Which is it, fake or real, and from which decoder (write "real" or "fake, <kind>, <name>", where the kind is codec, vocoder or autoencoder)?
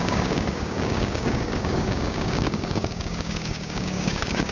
fake, codec, DAC